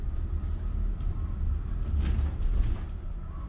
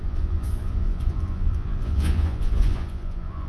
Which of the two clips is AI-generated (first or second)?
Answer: second